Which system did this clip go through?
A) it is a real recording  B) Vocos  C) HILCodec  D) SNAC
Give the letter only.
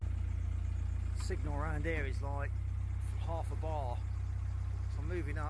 A